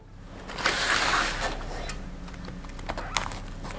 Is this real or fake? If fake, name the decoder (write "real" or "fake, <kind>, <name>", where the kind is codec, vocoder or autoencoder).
real